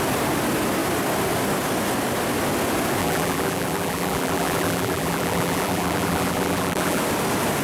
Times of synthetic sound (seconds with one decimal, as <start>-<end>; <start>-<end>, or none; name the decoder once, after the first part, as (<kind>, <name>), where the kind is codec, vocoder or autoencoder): 3.0-7.0 (vocoder, BigVGAN v2)